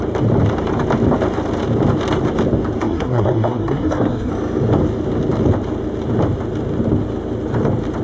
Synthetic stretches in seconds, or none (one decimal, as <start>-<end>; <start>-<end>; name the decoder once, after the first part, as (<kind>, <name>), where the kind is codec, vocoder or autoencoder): 2.8-4.3 (codec, SNAC)